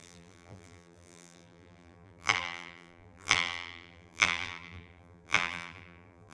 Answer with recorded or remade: remade